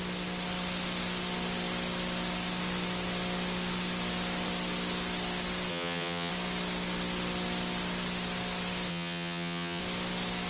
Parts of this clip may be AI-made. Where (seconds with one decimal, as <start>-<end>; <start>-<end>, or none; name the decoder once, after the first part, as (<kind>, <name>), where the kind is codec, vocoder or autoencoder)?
5.7-6.3 (vocoder, HiFi-GAN); 8.9-9.8

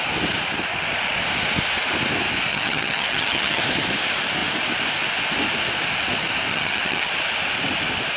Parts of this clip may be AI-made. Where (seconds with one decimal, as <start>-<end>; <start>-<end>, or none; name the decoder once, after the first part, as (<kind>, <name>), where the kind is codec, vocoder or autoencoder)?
2.5-3.6 (vocoder, HiFi-GAN); 6.5-7.1

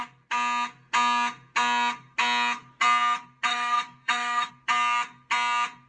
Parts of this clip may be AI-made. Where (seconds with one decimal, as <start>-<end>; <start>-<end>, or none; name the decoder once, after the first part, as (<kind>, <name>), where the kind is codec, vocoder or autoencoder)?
3.5-4.5 (autoencoder, DAC-VAE)

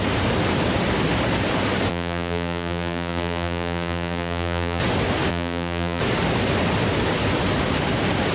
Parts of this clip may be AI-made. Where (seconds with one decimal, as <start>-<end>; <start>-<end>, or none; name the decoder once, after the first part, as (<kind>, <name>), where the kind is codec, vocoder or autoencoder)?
1.9-4.8 (vocoder, BigVGAN v2); 5.3-6.0

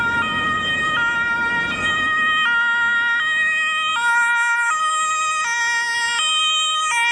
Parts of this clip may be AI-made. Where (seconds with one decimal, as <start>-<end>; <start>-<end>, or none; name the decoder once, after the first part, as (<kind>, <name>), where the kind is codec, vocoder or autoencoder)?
none

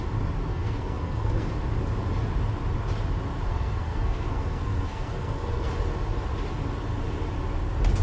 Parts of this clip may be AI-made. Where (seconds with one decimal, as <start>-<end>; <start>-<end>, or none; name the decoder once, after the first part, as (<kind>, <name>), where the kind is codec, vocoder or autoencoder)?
0.5-1.5 (codec, SNAC); 3.5-5.7

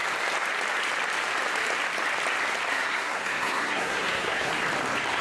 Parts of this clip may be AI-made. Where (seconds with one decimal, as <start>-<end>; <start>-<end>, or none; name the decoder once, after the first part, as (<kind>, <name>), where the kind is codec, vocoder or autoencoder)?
2.7-4.5 (codec, SNAC)